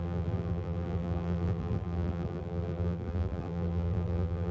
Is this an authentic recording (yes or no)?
no